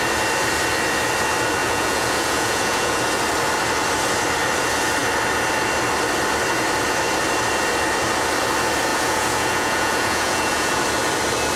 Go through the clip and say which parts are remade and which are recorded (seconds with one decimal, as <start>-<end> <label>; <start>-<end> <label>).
0.0-1.6 recorded; 1.6-3.0 remade; 3.0-8.9 recorded; 8.9-10.8 remade; 10.8-11.6 recorded